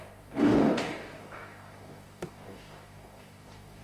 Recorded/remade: remade